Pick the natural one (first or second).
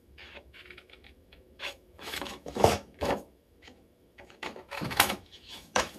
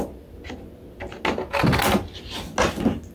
second